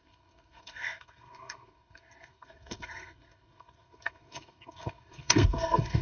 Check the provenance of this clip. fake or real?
fake